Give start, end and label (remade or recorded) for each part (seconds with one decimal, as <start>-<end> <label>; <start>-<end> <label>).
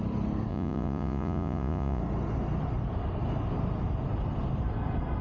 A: 0.0-0.5 recorded; 0.5-2.0 remade; 2.0-5.2 recorded